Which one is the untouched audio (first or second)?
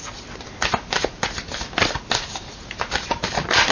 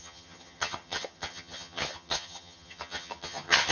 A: first